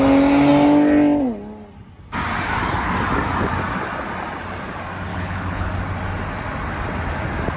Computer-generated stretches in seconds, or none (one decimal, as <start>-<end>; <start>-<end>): 5.1-5.7